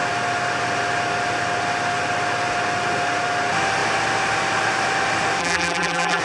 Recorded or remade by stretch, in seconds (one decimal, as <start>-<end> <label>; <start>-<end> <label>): 0.0-5.4 recorded; 5.4-6.2 remade